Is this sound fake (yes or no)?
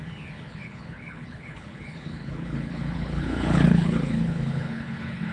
yes